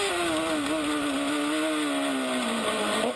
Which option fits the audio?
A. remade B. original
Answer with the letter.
B